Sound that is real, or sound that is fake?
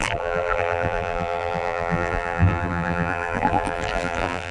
fake